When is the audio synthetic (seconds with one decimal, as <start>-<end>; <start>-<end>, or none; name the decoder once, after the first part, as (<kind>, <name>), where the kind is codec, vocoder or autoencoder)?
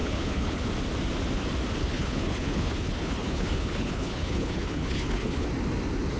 0.0-0.7 (codec, HILCodec); 1.8-5.5